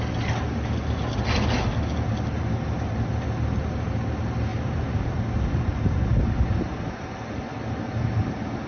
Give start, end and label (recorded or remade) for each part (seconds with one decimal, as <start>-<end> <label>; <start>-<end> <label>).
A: 0.0-4.5 recorded; 4.5-5.1 remade; 5.1-8.7 recorded